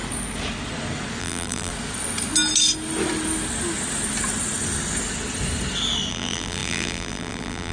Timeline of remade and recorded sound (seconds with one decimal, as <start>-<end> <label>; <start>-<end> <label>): 0.0-1.2 recorded; 1.2-1.7 remade; 1.7-6.1 recorded; 6.1-7.7 remade